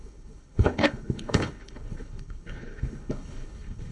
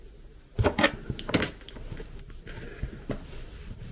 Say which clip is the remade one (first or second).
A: first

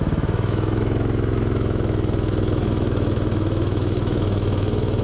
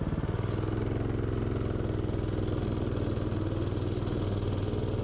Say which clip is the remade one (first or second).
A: first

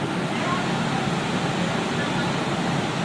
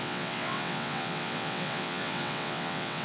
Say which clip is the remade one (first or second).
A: second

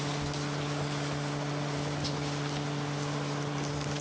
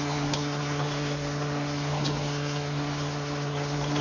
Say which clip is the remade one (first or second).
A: second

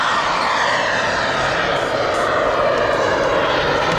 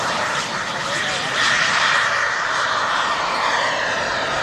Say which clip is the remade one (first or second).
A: second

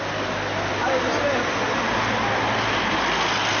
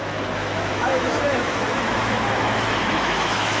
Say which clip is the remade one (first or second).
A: second